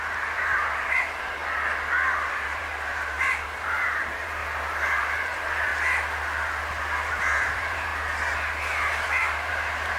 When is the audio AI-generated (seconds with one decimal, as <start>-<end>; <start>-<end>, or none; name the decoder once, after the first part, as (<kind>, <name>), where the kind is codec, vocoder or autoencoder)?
0.0-1.4 (vocoder, BigVGAN v2); 2.3-4.4; 4.9-5.7; 7.1-7.9; 9.5-10.0